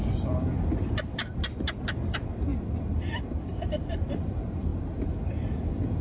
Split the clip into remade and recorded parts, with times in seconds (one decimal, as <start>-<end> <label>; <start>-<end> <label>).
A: 0.0-6.0 remade

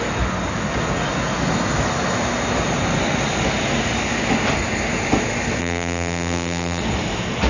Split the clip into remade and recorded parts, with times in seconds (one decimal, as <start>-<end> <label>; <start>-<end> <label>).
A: 0.0-5.6 recorded; 5.6-6.8 remade; 6.8-7.5 recorded

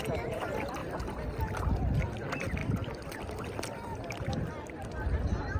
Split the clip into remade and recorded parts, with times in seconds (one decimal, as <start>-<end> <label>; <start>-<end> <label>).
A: 0.0-2.6 recorded; 2.6-4.5 remade; 4.5-5.6 recorded

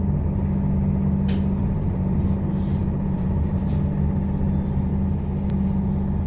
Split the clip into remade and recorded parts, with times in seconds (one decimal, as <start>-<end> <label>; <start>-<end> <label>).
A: 0.0-1.6 recorded; 1.6-2.2 remade; 2.2-2.7 recorded; 2.7-3.6 remade; 3.6-6.3 recorded